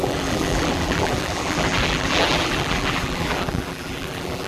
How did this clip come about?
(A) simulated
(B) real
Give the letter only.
A